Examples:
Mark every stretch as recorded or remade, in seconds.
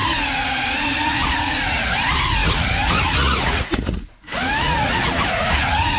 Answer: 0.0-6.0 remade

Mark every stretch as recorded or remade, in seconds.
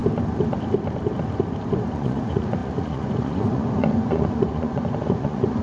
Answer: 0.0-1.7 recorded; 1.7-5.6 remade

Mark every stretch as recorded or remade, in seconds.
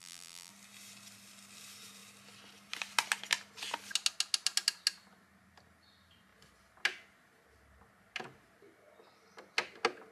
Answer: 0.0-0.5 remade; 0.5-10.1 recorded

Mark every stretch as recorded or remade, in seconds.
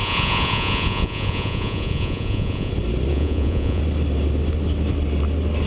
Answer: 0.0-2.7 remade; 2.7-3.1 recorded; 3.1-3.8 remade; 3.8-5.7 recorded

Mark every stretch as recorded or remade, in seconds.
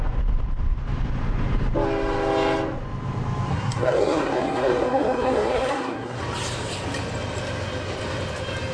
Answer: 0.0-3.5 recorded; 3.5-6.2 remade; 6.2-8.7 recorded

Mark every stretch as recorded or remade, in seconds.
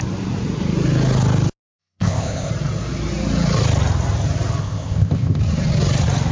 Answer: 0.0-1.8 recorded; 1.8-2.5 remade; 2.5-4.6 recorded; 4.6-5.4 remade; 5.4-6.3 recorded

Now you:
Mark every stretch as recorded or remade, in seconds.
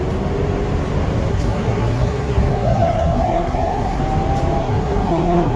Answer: 0.0-1.3 recorded; 1.3-4.0 remade; 4.0-4.6 recorded; 4.6-5.6 remade